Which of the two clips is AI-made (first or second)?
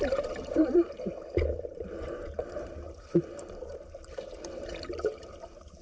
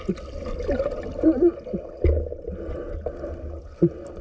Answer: first